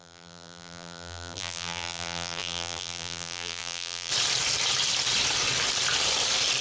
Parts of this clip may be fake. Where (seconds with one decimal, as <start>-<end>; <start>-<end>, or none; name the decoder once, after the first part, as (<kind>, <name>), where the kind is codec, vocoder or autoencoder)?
0.0-4.1 (vocoder, BigVGAN v2)